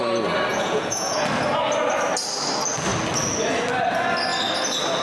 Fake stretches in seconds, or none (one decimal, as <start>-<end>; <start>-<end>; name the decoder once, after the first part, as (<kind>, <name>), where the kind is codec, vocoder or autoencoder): 0.5-1.2 (vocoder, Vocos)

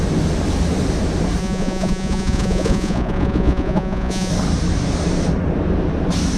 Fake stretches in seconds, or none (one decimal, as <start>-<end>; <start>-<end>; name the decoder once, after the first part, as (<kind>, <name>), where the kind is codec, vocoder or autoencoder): 1.4-4.3 (vocoder, Vocos)

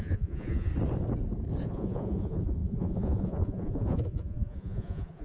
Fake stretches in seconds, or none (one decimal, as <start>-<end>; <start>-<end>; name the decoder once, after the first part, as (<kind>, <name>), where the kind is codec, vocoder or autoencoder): 0.0-0.7 (vocoder, Vocos); 1.6-5.2

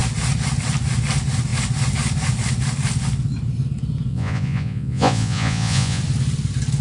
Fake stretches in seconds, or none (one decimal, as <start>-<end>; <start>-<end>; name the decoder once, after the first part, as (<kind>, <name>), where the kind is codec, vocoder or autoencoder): 4.1-6.0 (vocoder, Vocos)

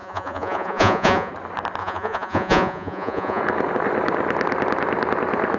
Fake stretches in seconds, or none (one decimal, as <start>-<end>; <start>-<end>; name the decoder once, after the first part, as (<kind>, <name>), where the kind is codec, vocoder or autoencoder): 0.0-1.3 (vocoder, Vocos); 1.8-3.4